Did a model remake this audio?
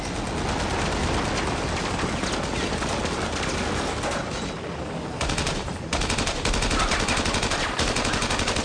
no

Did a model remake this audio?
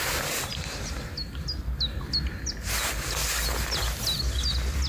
no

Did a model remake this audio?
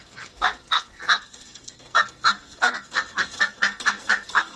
yes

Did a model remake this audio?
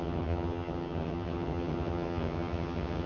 yes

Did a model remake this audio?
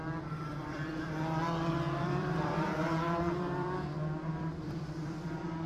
yes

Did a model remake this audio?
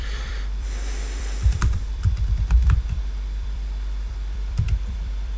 yes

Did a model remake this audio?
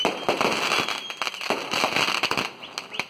no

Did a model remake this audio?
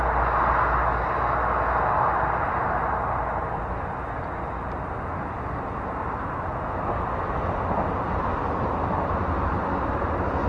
no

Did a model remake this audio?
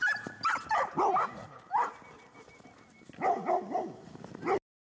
no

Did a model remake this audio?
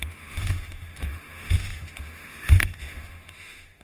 yes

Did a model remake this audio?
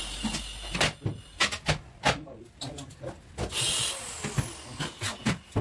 no